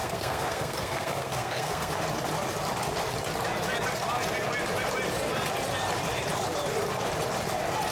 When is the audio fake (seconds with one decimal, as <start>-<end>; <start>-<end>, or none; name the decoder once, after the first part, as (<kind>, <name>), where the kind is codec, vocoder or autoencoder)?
0.0-1.9 (codec, SNAC)